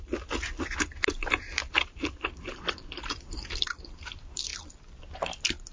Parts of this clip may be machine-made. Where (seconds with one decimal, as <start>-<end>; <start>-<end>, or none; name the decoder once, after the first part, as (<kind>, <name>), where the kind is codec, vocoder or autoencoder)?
1.2-4.0 (vocoder, BigVGAN v2)